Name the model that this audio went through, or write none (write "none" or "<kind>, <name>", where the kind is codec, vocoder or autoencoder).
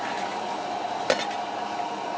none